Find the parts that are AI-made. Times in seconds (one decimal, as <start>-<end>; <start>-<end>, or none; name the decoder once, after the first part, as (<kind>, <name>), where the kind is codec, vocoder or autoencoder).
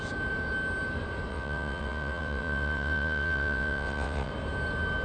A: 1.3-4.3 (vocoder, WaveNeXt)